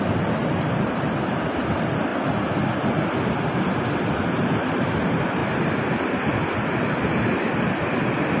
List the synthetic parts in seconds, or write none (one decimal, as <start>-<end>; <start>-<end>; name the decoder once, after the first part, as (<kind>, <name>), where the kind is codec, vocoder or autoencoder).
none

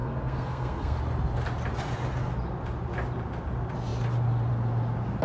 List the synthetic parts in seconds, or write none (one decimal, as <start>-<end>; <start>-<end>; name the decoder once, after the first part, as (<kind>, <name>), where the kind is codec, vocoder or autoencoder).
0.0-1.0 (codec, SNAC)

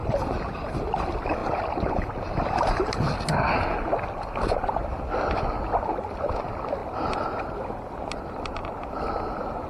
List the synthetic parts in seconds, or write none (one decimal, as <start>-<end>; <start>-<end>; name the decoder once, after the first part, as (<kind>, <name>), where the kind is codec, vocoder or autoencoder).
none

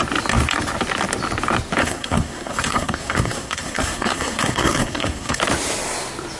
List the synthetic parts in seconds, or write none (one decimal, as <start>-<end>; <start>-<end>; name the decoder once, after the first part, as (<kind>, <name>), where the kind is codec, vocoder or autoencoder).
1.8-5.4 (codec, SNAC)